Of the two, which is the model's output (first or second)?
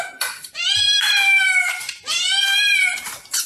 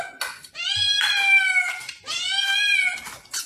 first